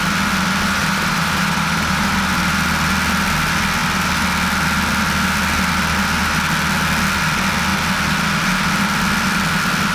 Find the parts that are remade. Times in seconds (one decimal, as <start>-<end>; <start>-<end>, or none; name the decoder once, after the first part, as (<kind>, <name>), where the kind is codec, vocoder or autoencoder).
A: 0.8-2.1 (vocoder, BigVGAN v2)